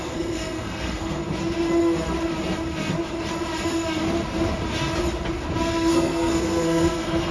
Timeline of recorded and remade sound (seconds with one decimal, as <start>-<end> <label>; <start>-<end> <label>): 0.0-1.2 remade; 1.2-5.6 recorded; 5.6-7.3 remade